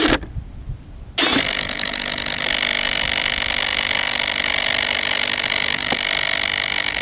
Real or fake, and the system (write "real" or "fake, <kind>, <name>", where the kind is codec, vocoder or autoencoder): real